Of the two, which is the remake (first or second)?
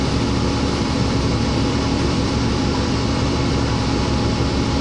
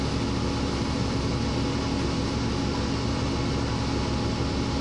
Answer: first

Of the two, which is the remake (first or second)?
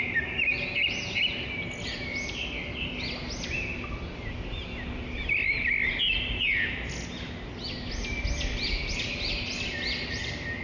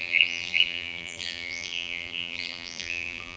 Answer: second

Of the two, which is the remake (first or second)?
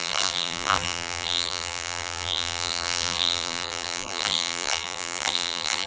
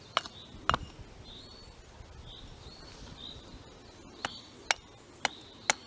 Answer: first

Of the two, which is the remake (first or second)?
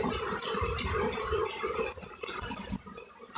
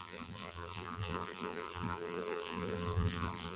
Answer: second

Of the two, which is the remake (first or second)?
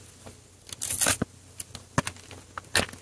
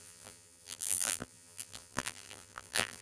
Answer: second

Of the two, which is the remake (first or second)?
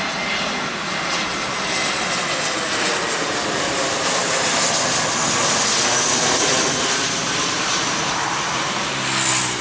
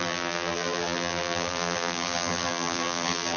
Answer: second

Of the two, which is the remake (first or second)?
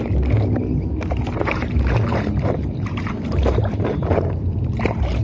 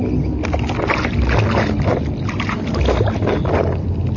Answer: first